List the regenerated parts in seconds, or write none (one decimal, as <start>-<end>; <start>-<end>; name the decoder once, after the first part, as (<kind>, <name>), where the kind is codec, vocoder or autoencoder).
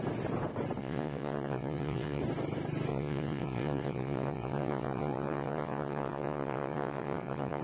0.8-2.2 (vocoder, WaveNeXt); 2.9-7.6